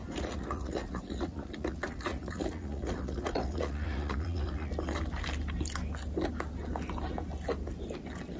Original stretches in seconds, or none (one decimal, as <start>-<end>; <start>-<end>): 4.7-8.4